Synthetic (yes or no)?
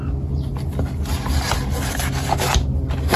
no